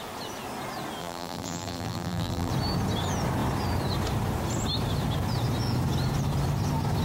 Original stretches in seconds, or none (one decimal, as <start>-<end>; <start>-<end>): 0.0-1.0; 2.5-7.0